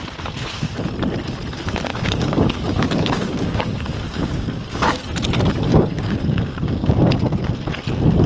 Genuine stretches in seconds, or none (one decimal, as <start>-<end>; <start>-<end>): 0.0-1.9; 5.0-5.7; 7.0-8.3